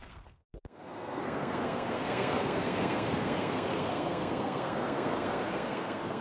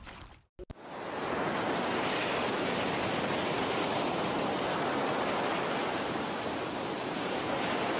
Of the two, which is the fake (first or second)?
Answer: first